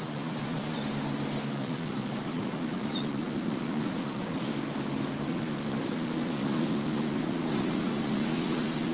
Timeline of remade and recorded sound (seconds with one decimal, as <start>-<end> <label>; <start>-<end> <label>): 0.0-0.8 remade; 0.8-1.5 recorded; 1.5-4.5 remade; 4.5-5.3 recorded; 5.3-8.9 remade